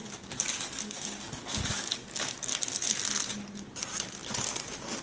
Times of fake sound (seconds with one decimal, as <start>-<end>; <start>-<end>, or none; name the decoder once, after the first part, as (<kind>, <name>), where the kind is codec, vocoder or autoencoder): 0.0-2.7 (codec, DAC)